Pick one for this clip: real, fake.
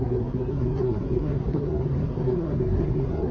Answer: fake